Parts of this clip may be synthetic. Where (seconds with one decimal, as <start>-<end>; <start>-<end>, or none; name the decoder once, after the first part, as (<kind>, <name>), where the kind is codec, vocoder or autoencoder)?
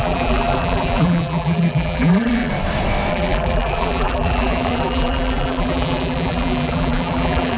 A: 0.0-2.5 (vocoder, BigVGAN v2); 3.1-7.6